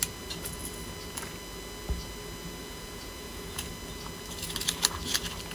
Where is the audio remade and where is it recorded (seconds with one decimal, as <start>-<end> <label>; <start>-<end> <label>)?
0.0-2.6 recorded; 2.6-3.7 remade; 3.7-5.5 recorded